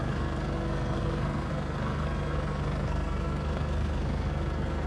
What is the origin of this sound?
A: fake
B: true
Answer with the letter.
A